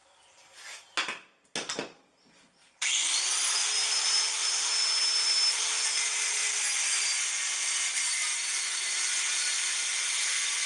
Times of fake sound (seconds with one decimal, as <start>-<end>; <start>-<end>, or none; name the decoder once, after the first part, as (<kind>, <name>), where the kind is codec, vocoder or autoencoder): none